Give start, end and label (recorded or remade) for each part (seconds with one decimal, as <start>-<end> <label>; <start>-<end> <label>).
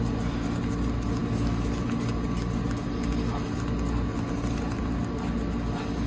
0.0-6.1 recorded